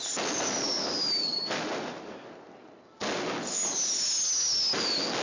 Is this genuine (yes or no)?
yes